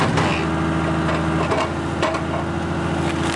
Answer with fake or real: real